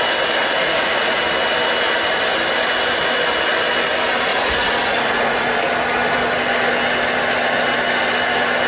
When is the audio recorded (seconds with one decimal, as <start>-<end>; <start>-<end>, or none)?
0.0-0.4; 1.2-4.3; 5.5-8.7